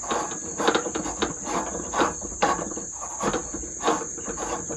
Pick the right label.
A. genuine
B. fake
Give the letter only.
A